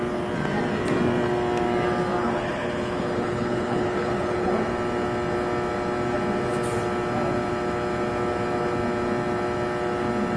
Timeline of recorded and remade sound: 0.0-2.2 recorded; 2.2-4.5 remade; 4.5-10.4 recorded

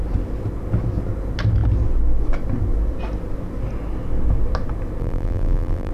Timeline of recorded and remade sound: 0.0-5.0 recorded; 5.0-5.9 remade